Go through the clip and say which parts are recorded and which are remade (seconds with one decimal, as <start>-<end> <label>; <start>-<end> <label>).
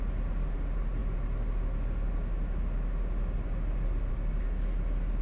0.0-5.2 recorded